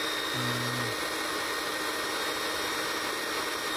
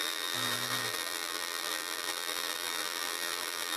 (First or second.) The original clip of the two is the first